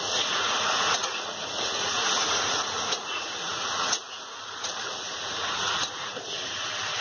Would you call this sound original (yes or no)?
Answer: no